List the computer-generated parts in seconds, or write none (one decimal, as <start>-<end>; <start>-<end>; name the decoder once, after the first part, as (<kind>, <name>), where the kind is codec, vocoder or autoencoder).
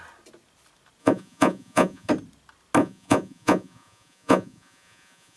1.0-2.1 (vocoder, Vocos); 2.8-5.4